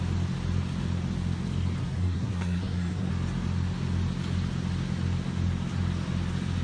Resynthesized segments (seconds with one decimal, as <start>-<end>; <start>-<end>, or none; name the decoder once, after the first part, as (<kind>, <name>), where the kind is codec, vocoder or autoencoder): 1.8-3.1 (codec, SNAC)